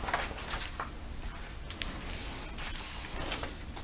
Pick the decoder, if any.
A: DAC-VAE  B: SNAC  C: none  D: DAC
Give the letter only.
C